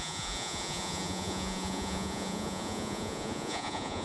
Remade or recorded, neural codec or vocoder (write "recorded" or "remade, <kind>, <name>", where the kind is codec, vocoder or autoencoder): remade, vocoder, Vocos